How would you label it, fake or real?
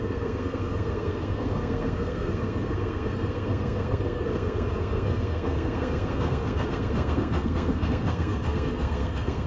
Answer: fake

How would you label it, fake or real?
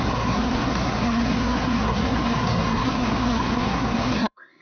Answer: fake